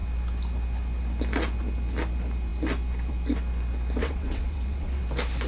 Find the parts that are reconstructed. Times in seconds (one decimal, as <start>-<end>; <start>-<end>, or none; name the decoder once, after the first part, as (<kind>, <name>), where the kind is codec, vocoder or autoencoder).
4.0-5.0 (vocoder, WaveNeXt)